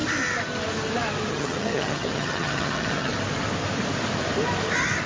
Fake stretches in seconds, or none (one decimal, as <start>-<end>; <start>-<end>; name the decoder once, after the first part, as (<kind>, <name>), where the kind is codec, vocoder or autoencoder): 1.3-3.1 (vocoder, HiFi-GAN)